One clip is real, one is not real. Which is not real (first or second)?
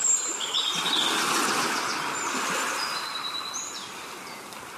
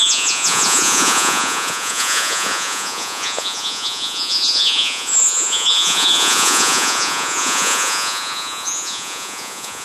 second